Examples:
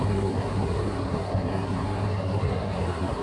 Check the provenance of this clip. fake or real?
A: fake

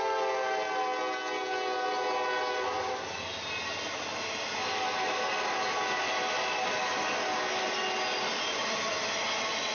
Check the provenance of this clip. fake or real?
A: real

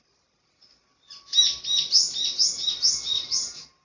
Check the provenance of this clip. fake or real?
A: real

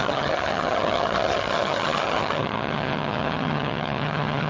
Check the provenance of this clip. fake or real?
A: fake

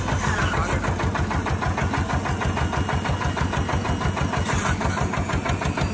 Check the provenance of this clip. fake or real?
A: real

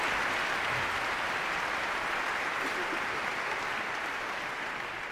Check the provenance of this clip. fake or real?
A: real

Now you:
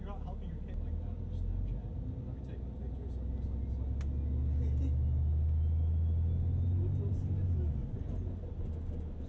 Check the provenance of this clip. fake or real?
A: real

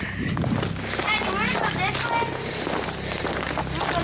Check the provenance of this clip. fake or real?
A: real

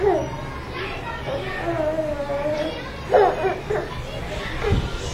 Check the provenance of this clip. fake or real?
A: real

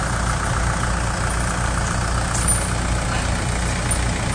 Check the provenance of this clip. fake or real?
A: real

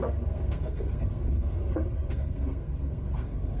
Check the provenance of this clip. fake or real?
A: fake